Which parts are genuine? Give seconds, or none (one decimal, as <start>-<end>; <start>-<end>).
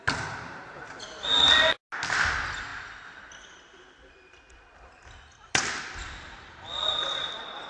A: 0.0-7.7